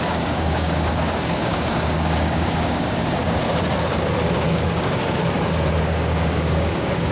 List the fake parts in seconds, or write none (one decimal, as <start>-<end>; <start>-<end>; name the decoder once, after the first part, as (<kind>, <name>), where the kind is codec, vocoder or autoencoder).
0.0-3.4 (codec, DAC); 4.3-5.2; 5.8-7.1